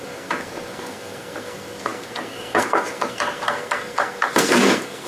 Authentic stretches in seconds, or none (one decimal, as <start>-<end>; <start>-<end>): none

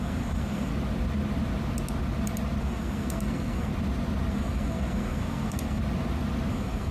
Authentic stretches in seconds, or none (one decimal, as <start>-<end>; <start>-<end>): 0.7-2.6; 3.7-4.3; 5.8-6.5

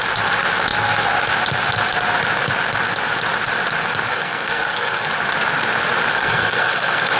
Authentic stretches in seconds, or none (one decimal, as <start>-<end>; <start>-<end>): 0.0-4.1; 5.1-6.1

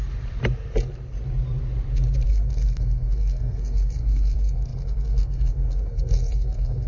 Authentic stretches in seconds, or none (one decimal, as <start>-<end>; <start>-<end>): 0.0-2.3

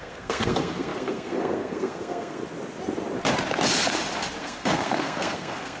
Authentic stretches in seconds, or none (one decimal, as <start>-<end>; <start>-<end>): 2.4-4.4

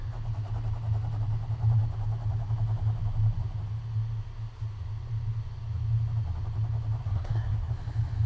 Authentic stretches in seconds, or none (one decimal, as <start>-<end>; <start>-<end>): 0.0-7.0; 7.7-8.3